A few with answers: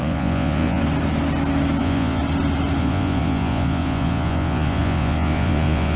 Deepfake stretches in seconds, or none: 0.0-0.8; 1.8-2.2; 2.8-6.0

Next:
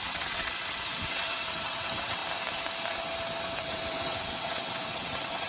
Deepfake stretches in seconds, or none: 0.0-2.2; 3.6-5.5